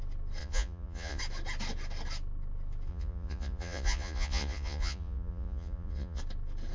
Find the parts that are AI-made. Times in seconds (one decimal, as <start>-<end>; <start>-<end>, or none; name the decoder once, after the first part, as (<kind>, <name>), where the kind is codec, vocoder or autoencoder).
0.4-1.2 (vocoder, Vocos); 2.9-6.2